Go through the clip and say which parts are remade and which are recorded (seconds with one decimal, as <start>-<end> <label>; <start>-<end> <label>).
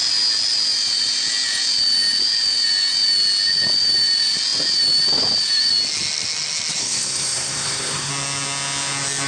0.0-6.8 recorded; 6.8-8.1 remade; 8.1-9.3 recorded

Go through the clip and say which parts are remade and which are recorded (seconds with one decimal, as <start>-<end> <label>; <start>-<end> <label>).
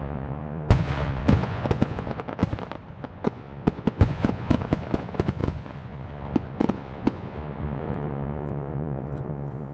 0.0-2.4 remade; 2.4-2.9 recorded; 2.9-9.7 remade